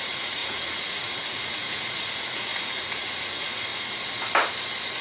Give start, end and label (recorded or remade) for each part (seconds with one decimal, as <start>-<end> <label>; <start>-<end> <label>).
0.0-3.7 remade; 3.7-5.0 recorded